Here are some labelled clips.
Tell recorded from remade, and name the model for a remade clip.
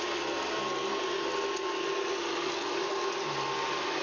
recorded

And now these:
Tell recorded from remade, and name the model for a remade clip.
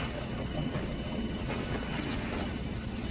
remade, vocoder, WaveNeXt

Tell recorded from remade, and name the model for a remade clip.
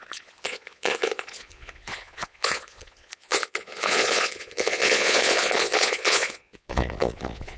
remade, vocoder, Vocos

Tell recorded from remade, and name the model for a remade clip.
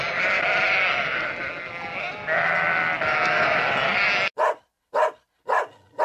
recorded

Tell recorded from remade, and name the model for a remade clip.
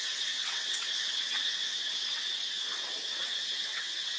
remade, vocoder, WaveNeXt